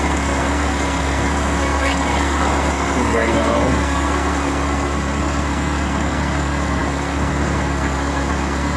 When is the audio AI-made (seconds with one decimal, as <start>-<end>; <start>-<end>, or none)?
0.0-8.8